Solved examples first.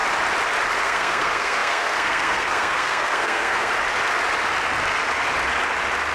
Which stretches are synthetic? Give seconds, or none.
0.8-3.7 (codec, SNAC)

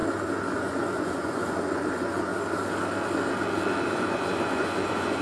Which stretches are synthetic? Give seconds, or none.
0.6-2.3 (vocoder, Vocos); 3.8-5.2

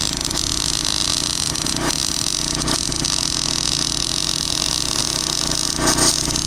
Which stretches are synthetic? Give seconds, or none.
none

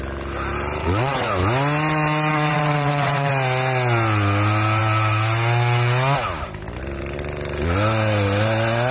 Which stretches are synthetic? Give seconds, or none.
0.8-1.3 (vocoder, WaveNeXt); 2.3-3.3

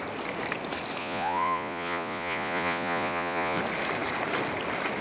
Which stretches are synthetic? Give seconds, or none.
1.0-3.6 (vocoder, Vocos)

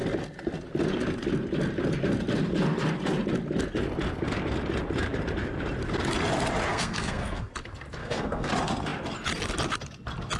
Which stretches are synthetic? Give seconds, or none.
6.7-7.5 (codec, SNAC); 8.0-8.5